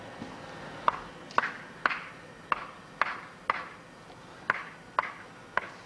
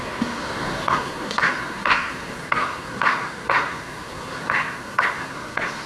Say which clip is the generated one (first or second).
second